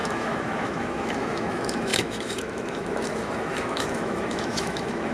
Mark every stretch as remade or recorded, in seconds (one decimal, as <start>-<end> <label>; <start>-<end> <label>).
0.0-5.1 remade